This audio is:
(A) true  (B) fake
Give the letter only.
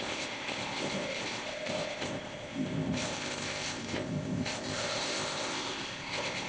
B